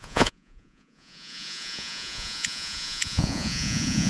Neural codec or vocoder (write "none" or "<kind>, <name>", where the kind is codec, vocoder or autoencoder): vocoder, Vocos